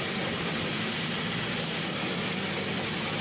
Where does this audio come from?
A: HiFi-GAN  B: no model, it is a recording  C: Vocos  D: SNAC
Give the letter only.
B